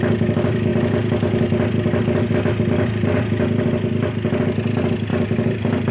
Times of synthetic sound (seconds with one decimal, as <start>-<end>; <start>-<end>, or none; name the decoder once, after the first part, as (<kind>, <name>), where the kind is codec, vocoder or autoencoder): none